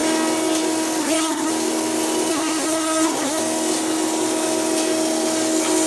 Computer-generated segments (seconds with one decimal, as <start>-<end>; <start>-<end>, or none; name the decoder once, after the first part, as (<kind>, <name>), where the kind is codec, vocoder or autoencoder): 1.0-1.5 (codec, SNAC); 2.3-3.4